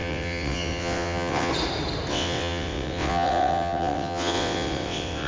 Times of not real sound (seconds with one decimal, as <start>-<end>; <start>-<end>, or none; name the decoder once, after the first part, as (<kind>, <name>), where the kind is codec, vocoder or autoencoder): 0.0-1.5 (vocoder, WaveNeXt); 2.1-5.3